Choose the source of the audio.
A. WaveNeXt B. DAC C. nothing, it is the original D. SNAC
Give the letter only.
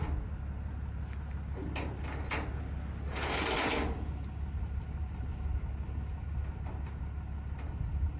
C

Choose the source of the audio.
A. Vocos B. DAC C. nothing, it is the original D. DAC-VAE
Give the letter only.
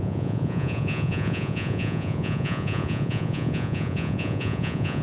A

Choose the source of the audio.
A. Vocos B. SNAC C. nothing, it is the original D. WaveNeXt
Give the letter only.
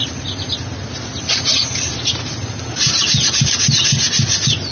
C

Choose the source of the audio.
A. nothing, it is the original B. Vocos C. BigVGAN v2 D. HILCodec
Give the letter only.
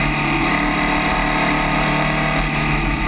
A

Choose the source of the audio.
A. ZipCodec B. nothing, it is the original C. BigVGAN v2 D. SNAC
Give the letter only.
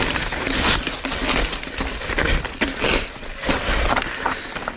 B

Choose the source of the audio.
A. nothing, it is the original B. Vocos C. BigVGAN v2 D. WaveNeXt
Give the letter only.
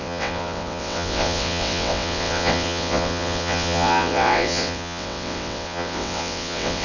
D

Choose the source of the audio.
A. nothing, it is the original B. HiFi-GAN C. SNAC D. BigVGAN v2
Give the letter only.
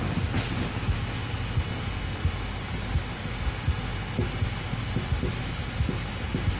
A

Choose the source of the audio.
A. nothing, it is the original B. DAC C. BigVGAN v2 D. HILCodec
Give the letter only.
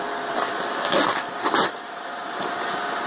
A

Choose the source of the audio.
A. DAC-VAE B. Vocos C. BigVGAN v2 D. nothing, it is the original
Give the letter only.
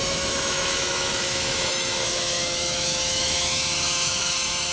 A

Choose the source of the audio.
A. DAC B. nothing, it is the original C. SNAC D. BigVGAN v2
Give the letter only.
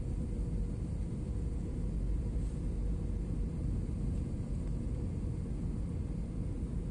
B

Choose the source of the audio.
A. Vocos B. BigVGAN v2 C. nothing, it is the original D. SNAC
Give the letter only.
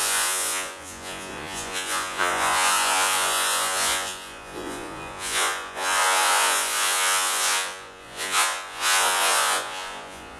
A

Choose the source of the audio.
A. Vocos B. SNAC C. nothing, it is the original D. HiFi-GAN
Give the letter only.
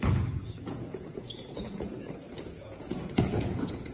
A